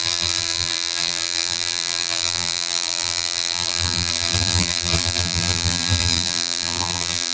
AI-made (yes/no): yes